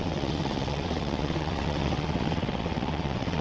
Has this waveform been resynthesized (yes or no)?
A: yes